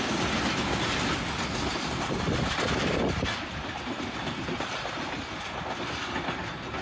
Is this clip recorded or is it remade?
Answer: recorded